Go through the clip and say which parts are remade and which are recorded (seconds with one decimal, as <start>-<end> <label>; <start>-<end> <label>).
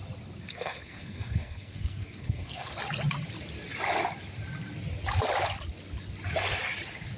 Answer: 0.0-0.5 recorded; 0.5-2.7 remade; 2.7-7.2 recorded